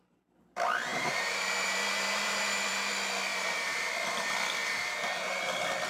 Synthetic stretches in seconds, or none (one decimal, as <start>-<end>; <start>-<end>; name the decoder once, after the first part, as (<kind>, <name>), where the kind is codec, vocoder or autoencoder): 0.9-2.9 (vocoder, BigVGAN v2); 3.3-3.9; 4.6-5.5